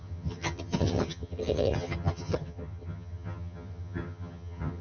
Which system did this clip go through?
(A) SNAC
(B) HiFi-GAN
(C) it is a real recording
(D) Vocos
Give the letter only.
B